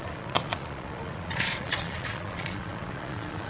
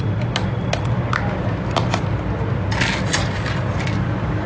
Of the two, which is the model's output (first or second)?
first